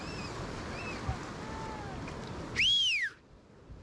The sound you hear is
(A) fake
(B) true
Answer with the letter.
B